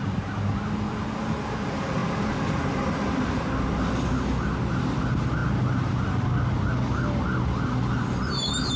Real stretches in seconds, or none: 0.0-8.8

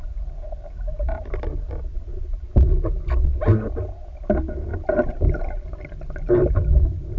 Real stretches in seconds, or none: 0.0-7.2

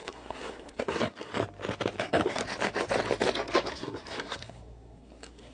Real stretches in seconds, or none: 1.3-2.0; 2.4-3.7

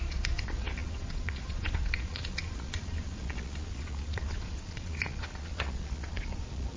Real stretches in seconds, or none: none

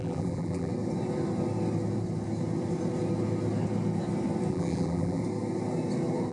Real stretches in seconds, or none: 0.7-4.5; 5.2-6.3

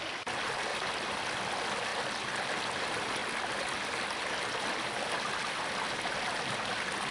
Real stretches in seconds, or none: 0.0-7.1